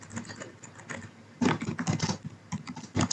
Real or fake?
real